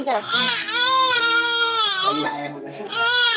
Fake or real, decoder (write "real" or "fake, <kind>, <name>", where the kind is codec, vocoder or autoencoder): fake, codec, SNAC